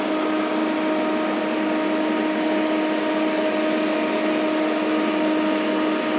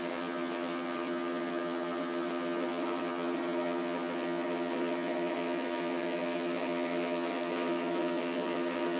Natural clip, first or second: first